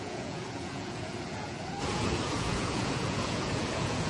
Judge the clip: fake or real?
fake